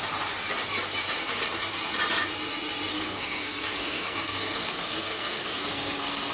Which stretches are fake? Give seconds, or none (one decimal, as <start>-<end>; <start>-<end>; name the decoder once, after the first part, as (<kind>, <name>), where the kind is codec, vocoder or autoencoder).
2.9-6.3 (codec, SNAC)